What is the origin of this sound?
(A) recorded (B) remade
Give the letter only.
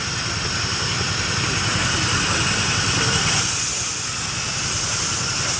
A